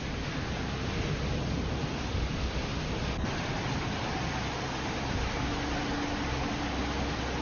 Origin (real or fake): real